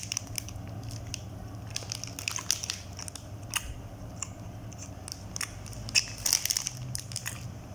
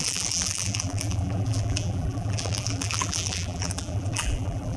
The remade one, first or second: second